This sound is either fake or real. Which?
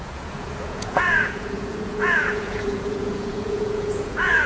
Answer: fake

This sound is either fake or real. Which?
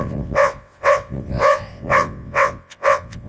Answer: fake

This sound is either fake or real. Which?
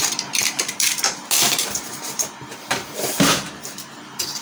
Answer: fake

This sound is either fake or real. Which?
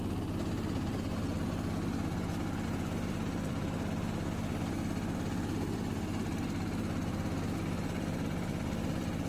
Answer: real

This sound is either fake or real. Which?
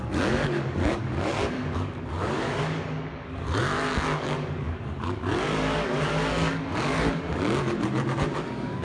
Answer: fake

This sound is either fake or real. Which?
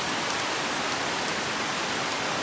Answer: fake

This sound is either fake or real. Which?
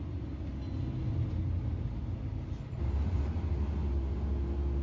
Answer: real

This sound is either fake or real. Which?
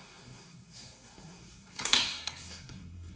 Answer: fake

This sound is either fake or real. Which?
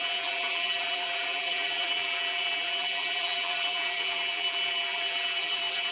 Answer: fake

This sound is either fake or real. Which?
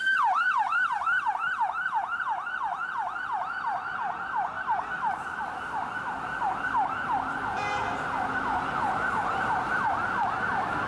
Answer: fake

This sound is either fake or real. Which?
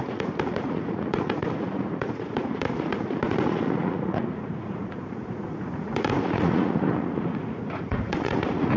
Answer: fake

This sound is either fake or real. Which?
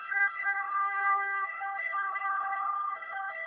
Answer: fake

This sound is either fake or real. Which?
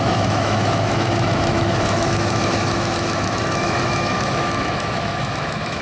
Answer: fake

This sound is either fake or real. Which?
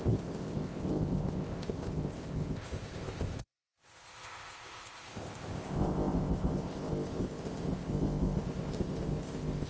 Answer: fake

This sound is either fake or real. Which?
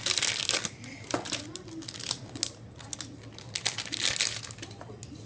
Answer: real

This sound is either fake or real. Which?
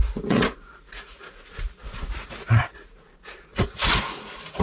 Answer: fake